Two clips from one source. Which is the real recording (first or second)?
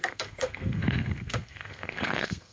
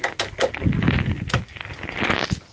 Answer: second